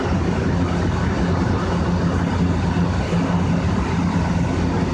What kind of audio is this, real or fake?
real